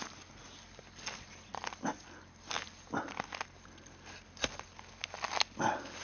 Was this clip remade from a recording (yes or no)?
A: no